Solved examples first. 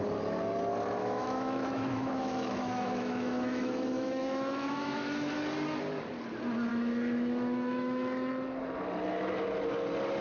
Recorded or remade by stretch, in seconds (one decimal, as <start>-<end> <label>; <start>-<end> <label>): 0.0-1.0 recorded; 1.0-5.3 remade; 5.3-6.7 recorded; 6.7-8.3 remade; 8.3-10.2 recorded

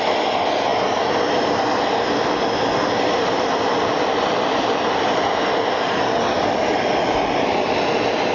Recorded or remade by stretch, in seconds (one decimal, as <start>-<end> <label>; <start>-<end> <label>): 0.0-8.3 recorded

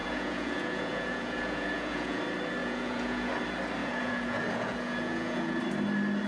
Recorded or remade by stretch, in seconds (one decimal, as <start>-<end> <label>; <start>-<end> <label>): 0.0-2.2 remade; 2.2-2.6 recorded; 2.6-3.3 remade; 3.3-3.8 recorded; 3.8-5.6 remade; 5.6-6.3 recorded